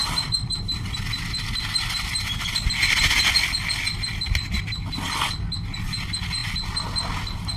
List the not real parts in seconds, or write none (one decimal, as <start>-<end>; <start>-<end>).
none